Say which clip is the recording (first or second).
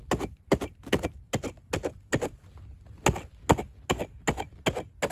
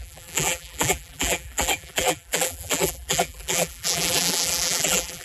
first